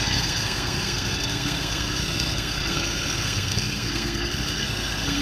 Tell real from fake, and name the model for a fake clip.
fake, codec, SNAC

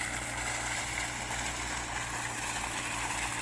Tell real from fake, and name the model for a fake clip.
real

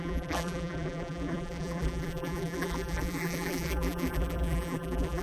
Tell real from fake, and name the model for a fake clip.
fake, vocoder, BigVGAN v2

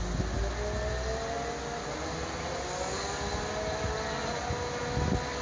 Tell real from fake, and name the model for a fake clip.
real